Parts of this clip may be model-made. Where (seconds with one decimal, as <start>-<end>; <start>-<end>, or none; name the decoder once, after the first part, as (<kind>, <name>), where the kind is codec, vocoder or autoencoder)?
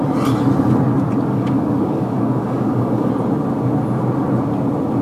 1.3-3.1 (codec, DAC)